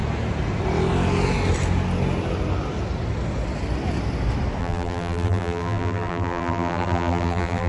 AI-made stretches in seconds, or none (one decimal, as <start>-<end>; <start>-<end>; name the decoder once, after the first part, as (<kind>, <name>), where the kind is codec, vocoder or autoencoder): 4.6-7.7 (vocoder, BigVGAN v2)